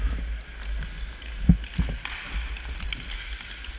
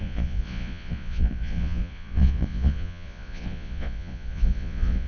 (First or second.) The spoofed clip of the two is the second